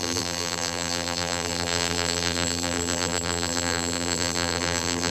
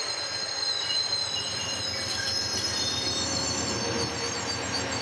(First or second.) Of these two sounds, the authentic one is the second